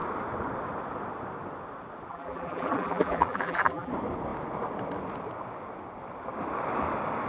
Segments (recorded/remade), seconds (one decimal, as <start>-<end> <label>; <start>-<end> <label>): 0.0-2.1 recorded; 2.1-3.9 remade; 3.9-7.3 recorded